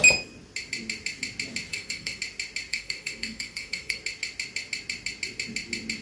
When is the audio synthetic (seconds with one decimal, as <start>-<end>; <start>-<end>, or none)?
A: 1.7-2.2; 2.7-4.0